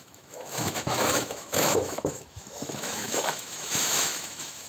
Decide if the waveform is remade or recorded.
remade